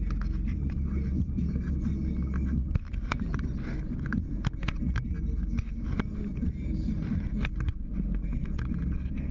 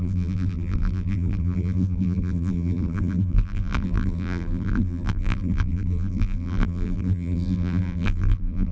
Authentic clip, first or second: first